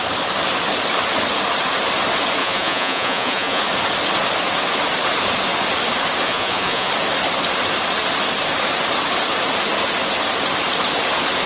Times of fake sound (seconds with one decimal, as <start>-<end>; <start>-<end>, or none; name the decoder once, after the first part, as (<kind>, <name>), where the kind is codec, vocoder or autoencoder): 2.4-3.6 (vocoder, Vocos); 6.3-6.9